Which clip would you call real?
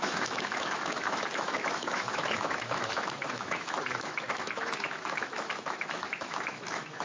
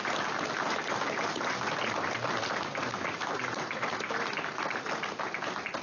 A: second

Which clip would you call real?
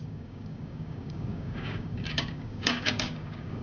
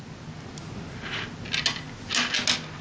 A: second